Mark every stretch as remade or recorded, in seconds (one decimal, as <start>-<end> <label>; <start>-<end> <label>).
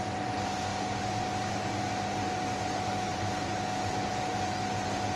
0.0-5.2 recorded